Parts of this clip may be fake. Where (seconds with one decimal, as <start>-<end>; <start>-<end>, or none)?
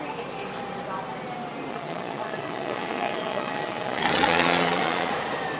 1.7-5.1